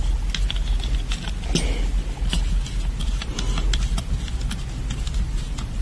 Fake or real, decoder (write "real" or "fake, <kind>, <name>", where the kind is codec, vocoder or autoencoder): real